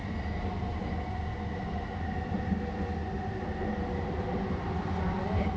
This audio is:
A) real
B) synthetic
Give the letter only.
A